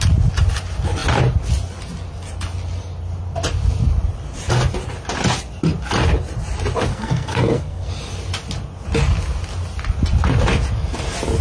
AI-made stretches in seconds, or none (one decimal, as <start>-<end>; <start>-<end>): 6.9-7.9